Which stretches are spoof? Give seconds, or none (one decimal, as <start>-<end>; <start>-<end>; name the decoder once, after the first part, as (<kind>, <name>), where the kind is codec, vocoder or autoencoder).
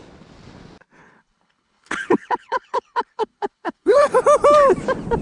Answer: 1.0-4.1 (codec, HILCodec)